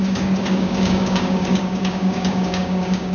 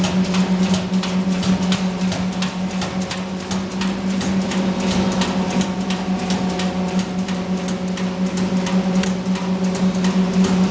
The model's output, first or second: first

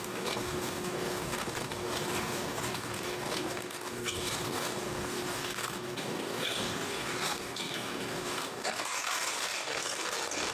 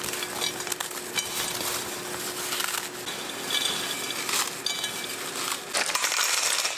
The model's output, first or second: first